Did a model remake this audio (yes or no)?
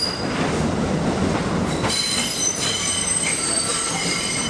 yes